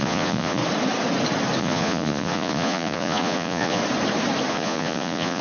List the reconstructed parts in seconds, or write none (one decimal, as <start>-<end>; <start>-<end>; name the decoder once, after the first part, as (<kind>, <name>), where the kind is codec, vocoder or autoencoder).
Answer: 0.0-0.6 (vocoder, Vocos); 1.6-3.8; 4.5-5.4